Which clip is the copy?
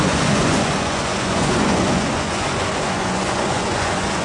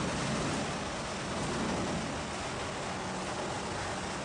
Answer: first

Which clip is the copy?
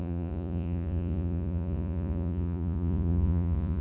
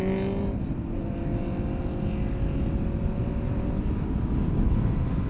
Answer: first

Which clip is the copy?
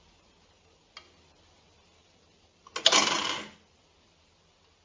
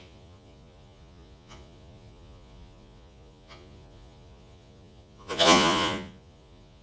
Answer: second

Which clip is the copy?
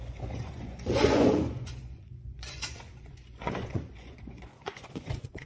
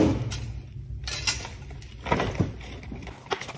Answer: first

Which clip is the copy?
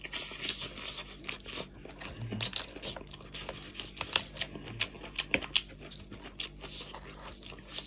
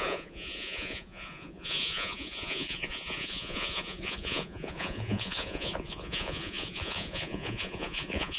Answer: second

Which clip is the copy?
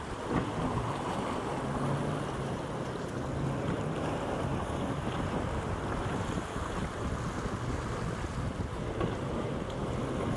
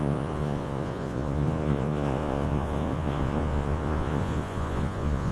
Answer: second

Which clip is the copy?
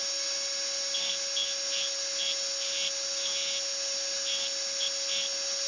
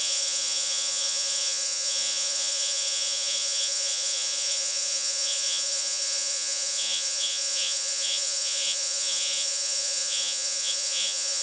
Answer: second